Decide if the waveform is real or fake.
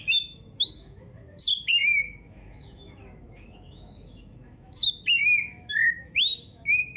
fake